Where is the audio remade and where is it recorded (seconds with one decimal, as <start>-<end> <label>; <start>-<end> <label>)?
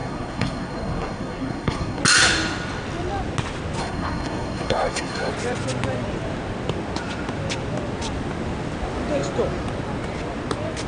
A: 0.0-2.0 remade; 2.0-3.8 recorded; 3.8-5.3 remade; 5.3-10.9 recorded